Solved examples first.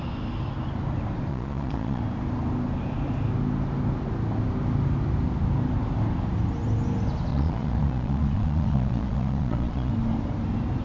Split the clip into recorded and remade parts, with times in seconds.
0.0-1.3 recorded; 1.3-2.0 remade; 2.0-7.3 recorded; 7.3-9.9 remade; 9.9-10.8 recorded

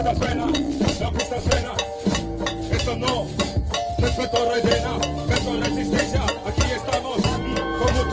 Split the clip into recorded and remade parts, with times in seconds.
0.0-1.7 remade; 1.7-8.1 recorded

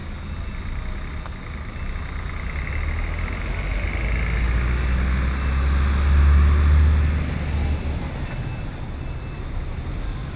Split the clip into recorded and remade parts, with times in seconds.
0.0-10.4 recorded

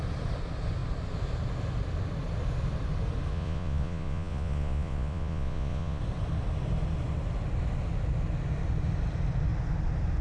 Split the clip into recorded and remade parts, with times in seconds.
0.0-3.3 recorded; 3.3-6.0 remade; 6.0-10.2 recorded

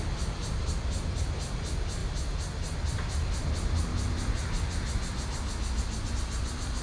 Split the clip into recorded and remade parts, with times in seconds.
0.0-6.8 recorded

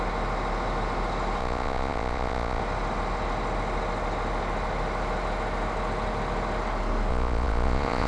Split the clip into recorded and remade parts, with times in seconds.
0.0-1.4 recorded; 1.4-2.6 remade; 2.6-7.1 recorded; 7.1-8.1 remade